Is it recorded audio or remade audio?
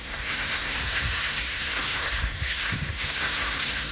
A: remade